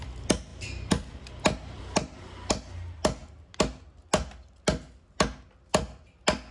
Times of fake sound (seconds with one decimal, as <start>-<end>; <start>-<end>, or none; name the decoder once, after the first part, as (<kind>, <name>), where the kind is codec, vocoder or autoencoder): 0.5-1.8 (vocoder, BigVGAN v2)